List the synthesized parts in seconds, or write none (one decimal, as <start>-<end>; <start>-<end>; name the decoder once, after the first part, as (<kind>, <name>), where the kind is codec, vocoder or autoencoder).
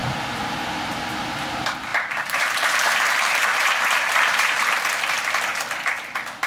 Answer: 1.9-4.6 (vocoder, BigVGAN v2)